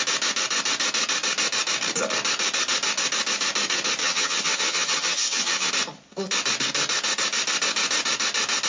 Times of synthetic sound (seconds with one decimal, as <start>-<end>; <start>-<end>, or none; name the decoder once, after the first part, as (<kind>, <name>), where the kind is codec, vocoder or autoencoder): 4.0-5.7 (vocoder, HiFi-GAN)